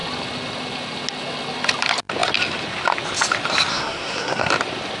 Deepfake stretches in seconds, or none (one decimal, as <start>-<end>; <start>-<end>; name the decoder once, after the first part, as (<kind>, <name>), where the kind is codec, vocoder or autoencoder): 3.7-4.5 (codec, SNAC)

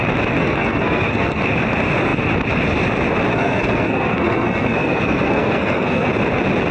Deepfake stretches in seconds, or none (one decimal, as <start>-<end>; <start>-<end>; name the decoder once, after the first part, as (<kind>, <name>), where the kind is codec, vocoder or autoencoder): 0.4-1.4 (codec, SNAC); 3.3-6.1